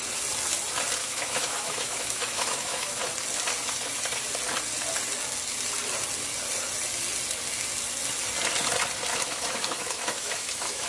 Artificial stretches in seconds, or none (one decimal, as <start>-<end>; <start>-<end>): 1.0-3.0; 9.1-10.9